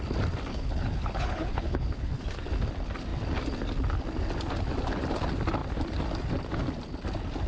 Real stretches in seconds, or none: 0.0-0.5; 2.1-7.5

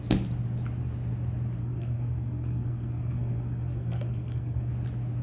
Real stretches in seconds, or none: 0.0-1.6; 4.7-5.2